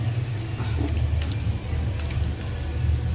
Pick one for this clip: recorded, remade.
recorded